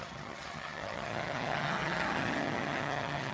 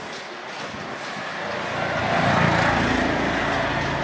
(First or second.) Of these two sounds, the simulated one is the first